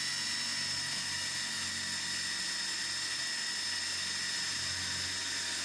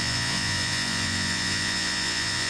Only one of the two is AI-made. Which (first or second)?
second